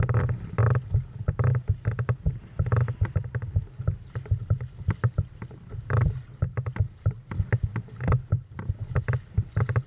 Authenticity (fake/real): real